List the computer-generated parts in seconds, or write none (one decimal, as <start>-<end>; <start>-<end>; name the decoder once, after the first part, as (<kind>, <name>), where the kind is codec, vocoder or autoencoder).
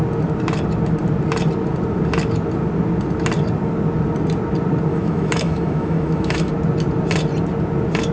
4.9-6.5 (autoencoder, DAC-VAE)